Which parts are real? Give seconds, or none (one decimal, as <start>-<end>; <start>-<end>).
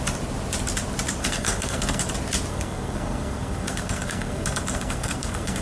0.0-1.2; 2.0-2.5